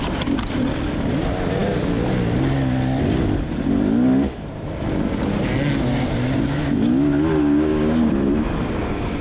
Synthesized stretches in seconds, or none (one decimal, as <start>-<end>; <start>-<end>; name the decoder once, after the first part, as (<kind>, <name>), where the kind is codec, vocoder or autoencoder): 7.4-8.1 (codec, DAC)

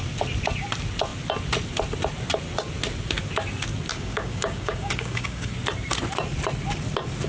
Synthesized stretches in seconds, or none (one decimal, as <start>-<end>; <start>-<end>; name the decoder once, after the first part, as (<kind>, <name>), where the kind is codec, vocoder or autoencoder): 3.9-5.5 (codec, DAC)

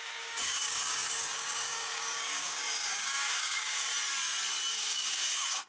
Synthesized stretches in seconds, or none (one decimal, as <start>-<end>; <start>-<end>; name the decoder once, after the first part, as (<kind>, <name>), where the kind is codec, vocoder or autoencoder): 0.0-3.9 (codec, DAC); 4.7-5.7

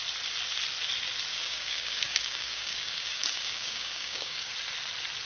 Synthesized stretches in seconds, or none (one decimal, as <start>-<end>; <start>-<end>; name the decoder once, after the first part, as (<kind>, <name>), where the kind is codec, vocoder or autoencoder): 1.3-4.5 (codec, DAC)

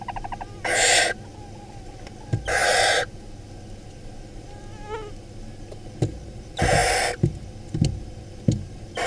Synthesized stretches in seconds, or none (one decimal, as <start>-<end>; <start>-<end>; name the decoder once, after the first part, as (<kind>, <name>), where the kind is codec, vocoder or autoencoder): none

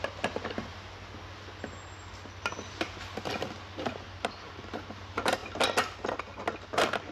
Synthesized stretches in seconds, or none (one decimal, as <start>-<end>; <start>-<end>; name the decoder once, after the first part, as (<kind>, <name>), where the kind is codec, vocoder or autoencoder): none

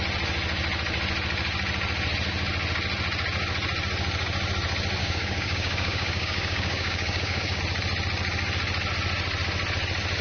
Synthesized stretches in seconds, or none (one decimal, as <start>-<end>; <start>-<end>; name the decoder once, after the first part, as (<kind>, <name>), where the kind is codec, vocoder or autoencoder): 5.0-7.6 (codec, DAC)